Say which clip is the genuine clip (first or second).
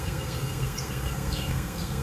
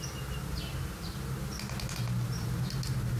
second